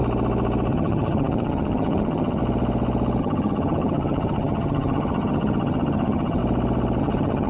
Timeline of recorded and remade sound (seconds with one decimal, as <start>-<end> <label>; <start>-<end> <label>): 0.0-0.7 recorded; 0.7-2.4 remade; 2.4-3.2 recorded; 3.2-6.4 remade; 6.4-7.0 recorded; 7.0-7.5 remade